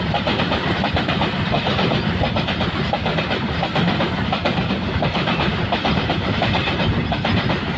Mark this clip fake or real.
fake